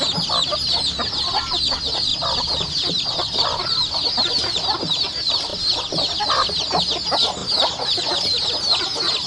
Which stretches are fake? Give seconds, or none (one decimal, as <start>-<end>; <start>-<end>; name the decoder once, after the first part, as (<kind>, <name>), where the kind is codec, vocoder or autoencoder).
2.1-4.3 (vocoder, BigVGAN v2); 7.4-8.1